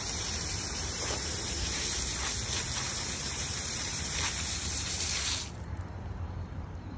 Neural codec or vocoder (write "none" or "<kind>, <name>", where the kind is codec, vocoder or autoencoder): vocoder, BigVGAN v2